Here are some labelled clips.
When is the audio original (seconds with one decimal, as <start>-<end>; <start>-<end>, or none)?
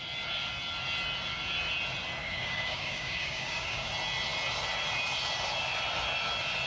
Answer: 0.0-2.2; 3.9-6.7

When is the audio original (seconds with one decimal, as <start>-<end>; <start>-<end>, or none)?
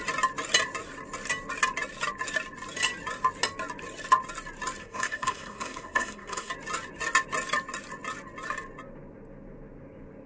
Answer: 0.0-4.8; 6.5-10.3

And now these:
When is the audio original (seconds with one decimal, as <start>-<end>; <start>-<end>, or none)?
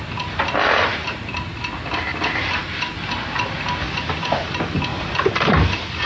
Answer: 0.0-0.9; 1.4-4.9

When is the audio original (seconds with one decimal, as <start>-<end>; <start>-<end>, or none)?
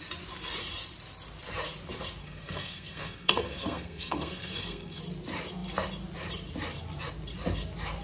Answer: 0.0-2.2; 5.0-8.0